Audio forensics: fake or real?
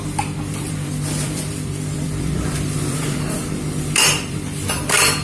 fake